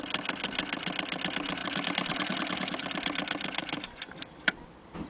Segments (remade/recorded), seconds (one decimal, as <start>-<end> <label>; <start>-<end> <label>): 0.0-1.6 recorded; 1.6-5.1 remade

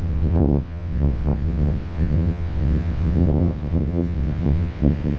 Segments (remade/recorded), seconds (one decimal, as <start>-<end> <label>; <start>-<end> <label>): 0.0-5.2 remade

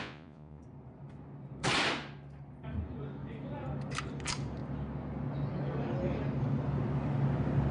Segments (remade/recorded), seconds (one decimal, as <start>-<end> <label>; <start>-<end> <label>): 0.0-0.6 remade; 0.6-7.7 recorded